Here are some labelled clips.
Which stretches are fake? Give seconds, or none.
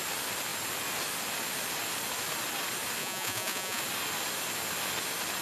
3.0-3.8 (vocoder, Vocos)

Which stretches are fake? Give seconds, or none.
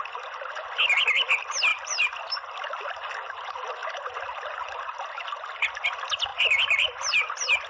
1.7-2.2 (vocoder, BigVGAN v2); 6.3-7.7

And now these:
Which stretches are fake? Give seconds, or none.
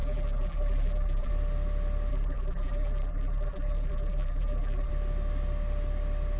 0.0-1.3 (vocoder, BigVGAN v2); 2.1-4.9